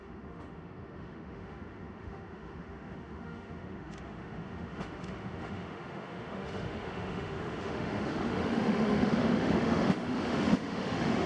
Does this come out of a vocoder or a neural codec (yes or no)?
yes